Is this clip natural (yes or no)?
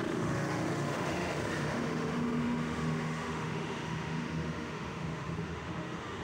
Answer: no